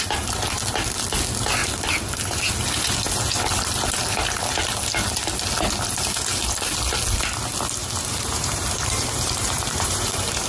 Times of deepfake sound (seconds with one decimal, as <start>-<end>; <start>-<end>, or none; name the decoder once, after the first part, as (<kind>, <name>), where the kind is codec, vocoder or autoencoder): 7.8-10.5 (vocoder, BigVGAN v2)